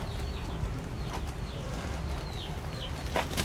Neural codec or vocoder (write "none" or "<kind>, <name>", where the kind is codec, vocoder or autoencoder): none